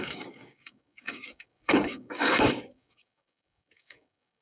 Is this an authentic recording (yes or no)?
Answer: no